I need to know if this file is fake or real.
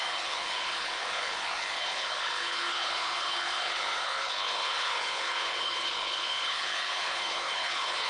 fake